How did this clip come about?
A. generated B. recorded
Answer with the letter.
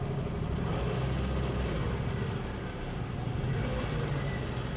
B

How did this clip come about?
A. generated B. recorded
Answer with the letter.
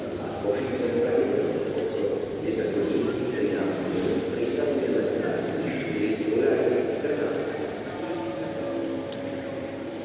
A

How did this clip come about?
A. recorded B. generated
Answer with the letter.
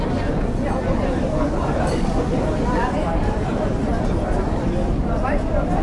B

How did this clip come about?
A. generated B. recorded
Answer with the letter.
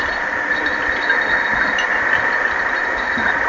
B